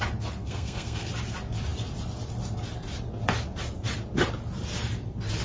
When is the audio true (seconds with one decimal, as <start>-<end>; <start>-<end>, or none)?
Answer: 0.0-0.4; 1.1-5.4